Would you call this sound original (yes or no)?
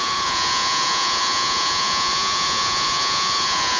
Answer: no